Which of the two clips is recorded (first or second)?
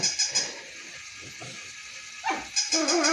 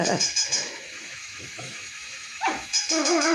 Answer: first